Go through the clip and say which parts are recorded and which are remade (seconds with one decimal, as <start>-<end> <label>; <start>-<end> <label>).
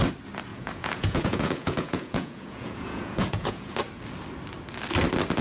0.0-0.5 recorded; 0.5-3.7 remade; 3.7-5.4 recorded